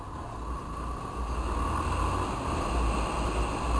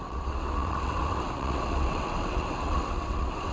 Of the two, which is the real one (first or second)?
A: first